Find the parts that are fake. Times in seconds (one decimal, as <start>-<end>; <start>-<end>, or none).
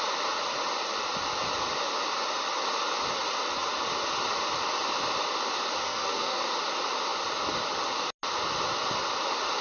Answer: 5.8-6.4